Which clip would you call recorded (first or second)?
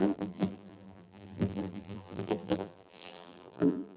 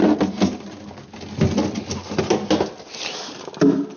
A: second